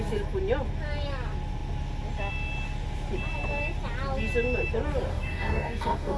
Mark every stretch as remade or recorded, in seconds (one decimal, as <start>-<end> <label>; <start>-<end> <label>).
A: 0.0-5.1 recorded; 5.1-6.2 remade